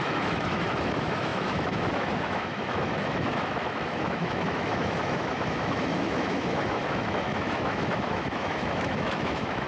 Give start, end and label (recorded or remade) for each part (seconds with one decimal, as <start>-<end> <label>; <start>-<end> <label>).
0.0-9.7 remade